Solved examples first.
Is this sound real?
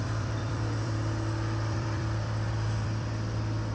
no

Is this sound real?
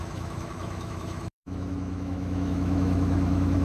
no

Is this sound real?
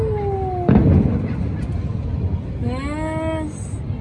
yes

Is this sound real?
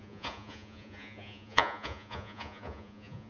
no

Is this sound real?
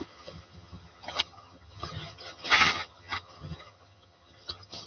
no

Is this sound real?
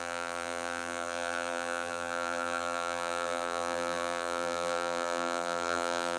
no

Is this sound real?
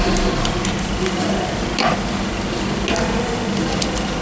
yes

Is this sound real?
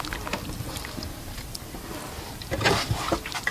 no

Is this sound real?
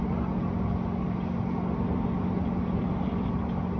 yes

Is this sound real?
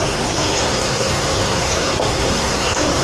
no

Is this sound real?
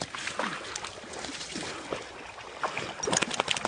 yes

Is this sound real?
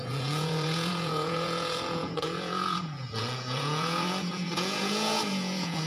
no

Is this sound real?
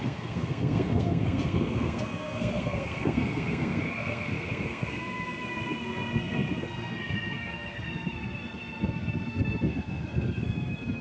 no